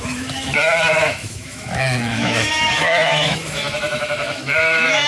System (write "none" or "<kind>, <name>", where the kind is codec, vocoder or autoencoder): autoencoder, DAC-VAE